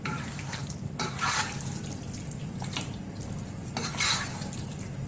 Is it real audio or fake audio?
real